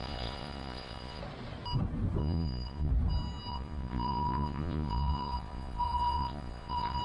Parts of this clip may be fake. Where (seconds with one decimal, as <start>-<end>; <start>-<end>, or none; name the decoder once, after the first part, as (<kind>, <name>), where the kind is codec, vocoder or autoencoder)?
0.0-1.2 (vocoder, Vocos); 2.2-2.9; 3.5-7.0